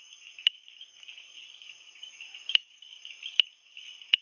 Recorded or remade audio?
remade